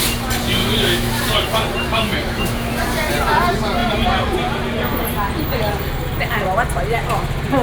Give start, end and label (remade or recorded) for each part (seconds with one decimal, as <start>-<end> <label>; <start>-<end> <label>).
0.0-0.6 recorded; 0.6-1.1 remade; 1.1-1.9 recorded; 1.9-2.7 remade; 2.7-7.6 recorded